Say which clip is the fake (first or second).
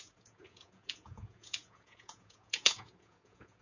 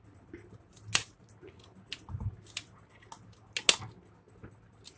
first